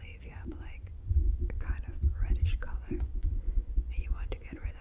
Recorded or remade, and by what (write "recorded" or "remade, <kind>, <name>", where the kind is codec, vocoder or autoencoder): remade, vocoder, Vocos